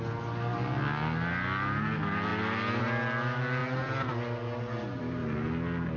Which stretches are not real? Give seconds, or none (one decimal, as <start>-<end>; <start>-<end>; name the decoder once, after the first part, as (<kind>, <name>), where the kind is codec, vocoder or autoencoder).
none

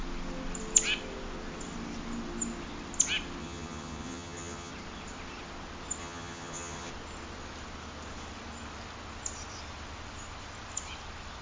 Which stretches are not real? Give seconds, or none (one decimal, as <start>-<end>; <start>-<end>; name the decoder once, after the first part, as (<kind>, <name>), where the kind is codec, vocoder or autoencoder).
3.4-4.7 (vocoder, HiFi-GAN); 6.0-6.9

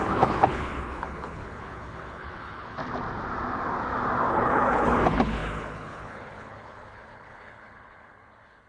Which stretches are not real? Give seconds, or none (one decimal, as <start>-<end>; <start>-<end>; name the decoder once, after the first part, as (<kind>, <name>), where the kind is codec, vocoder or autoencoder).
0.0-2.8 (codec, HILCodec); 4.3-8.7

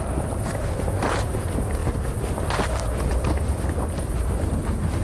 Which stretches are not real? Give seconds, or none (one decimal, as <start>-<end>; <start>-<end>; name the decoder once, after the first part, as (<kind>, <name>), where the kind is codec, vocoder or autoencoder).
none

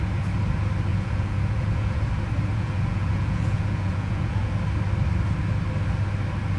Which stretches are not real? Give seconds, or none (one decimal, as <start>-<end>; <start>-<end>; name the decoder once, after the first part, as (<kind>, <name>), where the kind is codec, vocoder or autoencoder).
0.9-2.1 (vocoder, Vocos); 2.5-4.5

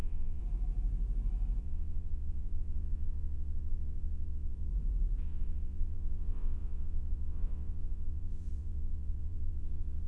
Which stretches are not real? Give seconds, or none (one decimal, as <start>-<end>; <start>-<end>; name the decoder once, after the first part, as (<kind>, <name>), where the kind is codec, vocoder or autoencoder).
0.0-0.4 (vocoder, WaveNeXt); 1.6-4.7; 5.2-10.1

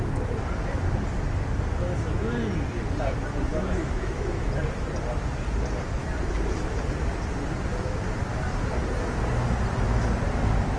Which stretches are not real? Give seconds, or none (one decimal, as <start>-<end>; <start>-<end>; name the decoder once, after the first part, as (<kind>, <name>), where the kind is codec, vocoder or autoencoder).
1.7-2.3 (autoencoder, DAC-VAE); 3.5-4.5

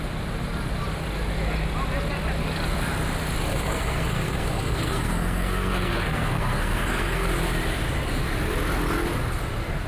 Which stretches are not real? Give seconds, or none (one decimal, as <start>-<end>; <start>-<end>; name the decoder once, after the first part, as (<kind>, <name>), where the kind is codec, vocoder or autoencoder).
3.5-7.3 (codec, SNAC)